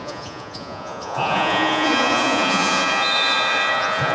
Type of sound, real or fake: fake